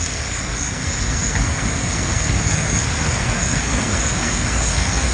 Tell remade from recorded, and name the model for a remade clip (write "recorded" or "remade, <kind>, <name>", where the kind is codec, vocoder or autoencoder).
remade, codec, SNAC